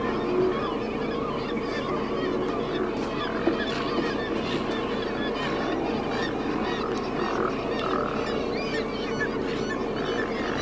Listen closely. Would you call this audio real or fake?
real